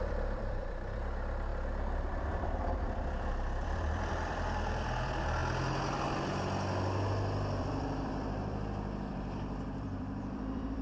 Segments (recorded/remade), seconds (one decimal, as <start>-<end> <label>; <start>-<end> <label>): 0.0-5.4 remade; 5.4-7.6 recorded; 7.6-10.8 remade